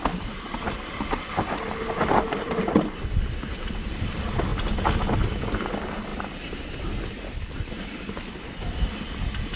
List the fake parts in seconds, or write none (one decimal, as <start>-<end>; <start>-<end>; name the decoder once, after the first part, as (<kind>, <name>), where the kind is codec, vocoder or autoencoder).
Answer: 0.0-4.5 (vocoder, BigVGAN v2); 5.4-9.6